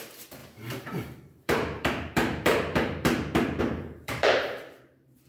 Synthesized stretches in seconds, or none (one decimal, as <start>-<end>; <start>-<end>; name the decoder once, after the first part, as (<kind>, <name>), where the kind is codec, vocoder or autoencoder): 0.0-5.3 (vocoder, BigVGAN v2)